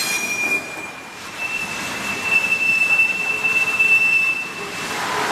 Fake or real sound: fake